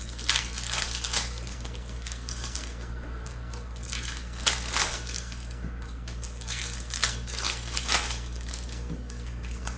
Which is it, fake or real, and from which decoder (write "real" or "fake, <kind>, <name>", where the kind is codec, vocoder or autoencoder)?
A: fake, codec, SNAC